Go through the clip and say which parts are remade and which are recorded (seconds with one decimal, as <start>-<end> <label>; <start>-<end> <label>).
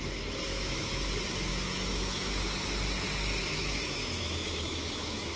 0.0-0.5 recorded; 0.5-1.1 remade; 1.1-1.5 recorded; 1.5-2.3 remade; 2.3-3.4 recorded; 3.4-5.4 remade